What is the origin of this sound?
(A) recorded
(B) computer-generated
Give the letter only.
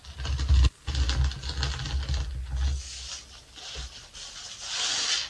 A